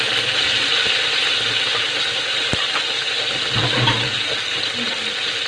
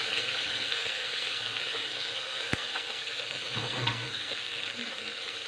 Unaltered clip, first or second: first